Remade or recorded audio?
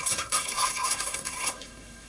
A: remade